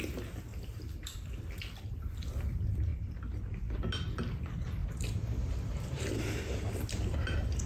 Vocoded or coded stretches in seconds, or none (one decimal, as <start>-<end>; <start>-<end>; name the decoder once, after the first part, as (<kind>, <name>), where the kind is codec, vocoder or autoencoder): 0.5-1.5 (vocoder, BigVGAN v2); 4.8-6.4